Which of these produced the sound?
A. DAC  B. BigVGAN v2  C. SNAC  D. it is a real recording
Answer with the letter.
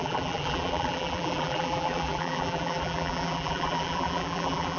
B